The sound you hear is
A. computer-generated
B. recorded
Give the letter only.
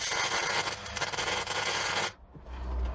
B